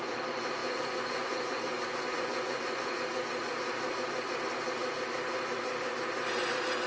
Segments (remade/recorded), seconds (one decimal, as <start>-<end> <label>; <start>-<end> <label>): 0.0-0.6 recorded; 0.6-3.0 remade; 3.0-6.9 recorded